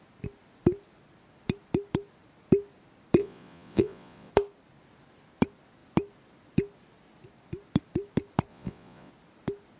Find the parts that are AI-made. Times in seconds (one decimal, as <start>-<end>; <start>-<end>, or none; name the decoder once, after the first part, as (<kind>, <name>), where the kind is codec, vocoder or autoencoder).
3.2-4.3 (vocoder, Vocos); 8.5-9.1